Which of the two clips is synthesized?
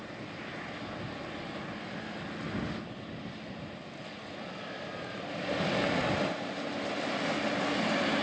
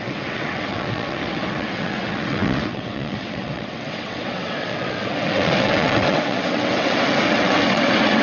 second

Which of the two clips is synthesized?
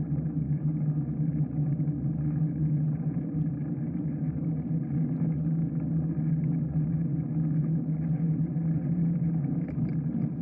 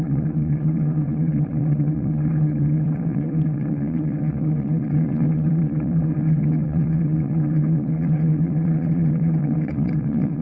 second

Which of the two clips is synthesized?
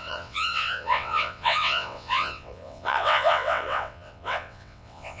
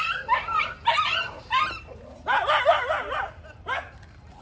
first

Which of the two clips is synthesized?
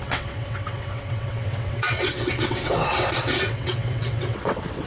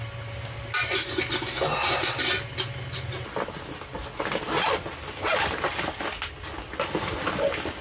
first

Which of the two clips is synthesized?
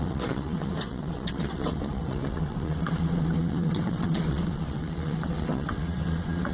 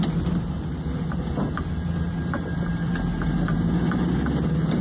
first